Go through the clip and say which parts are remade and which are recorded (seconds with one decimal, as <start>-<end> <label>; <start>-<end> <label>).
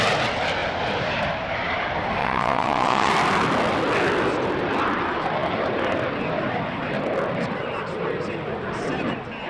0.0-2.2 recorded; 2.2-3.1 remade; 3.1-9.5 recorded